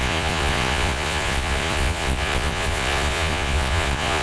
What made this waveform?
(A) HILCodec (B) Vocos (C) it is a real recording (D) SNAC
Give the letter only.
B